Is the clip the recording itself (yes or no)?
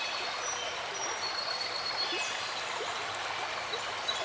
yes